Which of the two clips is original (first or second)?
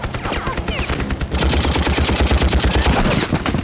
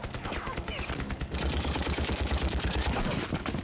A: first